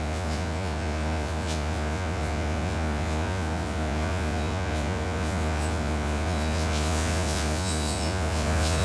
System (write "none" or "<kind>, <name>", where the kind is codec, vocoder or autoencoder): vocoder, Vocos